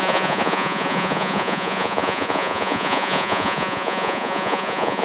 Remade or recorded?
remade